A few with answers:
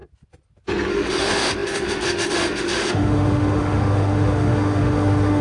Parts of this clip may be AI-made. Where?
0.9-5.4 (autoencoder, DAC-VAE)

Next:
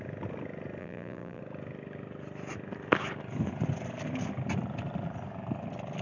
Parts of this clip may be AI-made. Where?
0.8-1.4 (vocoder, BigVGAN v2)

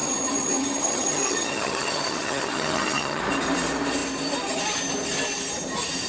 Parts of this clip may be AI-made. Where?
0.0-3.2 (vocoder, HiFi-GAN)

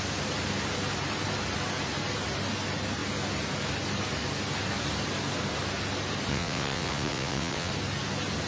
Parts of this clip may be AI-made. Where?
6.3-7.7 (vocoder, WaveNeXt)

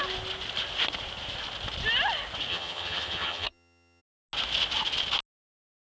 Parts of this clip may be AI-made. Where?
2.5-4.0 (vocoder, HiFi-GAN)

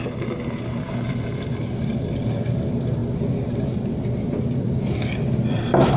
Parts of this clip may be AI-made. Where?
1.1-3.0 (vocoder, BigVGAN v2); 3.7-6.0

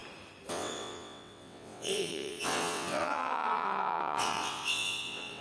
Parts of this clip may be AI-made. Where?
0.5-5.4 (vocoder, WaveNeXt)

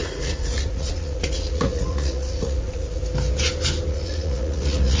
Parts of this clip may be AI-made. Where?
0.0-3.0 (vocoder, Vocos); 3.9-5.0